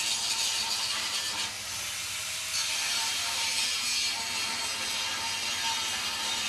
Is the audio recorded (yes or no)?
yes